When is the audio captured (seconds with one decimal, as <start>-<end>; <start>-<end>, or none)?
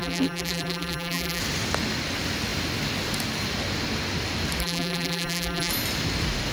1.4-4.6; 5.7-6.5